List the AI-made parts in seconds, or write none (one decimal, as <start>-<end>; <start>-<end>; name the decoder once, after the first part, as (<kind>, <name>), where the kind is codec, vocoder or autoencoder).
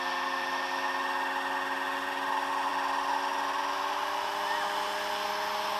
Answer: none